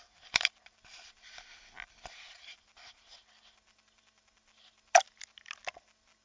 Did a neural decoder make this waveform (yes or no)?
no